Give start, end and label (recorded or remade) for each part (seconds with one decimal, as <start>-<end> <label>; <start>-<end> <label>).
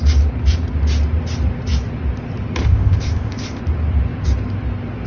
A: 0.0-2.6 recorded; 2.6-3.6 remade; 3.6-5.1 recorded